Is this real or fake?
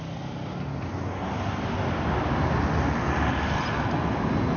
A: real